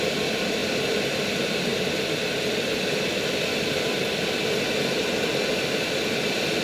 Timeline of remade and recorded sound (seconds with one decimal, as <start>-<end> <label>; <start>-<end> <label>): 0.0-6.6 recorded